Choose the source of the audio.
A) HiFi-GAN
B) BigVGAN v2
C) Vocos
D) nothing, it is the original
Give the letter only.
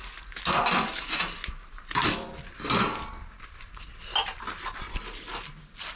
D